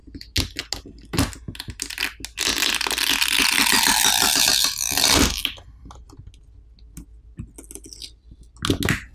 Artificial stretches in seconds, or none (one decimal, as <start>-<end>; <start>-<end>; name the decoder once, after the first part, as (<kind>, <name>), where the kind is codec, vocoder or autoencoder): none